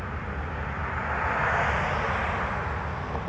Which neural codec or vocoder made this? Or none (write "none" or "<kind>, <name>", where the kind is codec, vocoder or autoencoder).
none